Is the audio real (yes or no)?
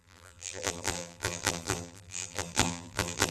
no